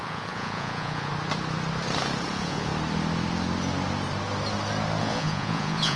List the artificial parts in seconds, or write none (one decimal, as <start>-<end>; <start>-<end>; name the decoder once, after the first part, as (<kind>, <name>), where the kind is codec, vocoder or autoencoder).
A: 0.0-1.1 (vocoder, Vocos); 2.3-2.7; 5.0-6.0